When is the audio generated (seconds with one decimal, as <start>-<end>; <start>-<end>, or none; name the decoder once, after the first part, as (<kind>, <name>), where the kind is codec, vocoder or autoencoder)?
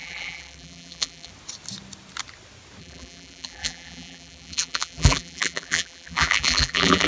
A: 0.0-1.3 (vocoder, BigVGAN v2); 2.8-7.1